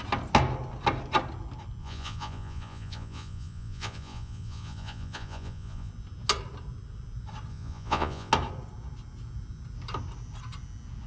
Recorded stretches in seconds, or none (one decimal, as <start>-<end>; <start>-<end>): 0.0-1.8; 5.9-7.5; 8.3-11.1